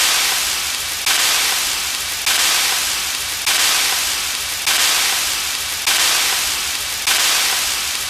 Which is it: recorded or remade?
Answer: recorded